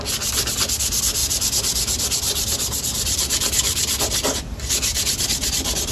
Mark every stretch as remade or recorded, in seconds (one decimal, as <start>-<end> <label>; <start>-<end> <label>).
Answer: 0.0-1.2 recorded; 1.2-4.7 remade; 4.7-5.9 recorded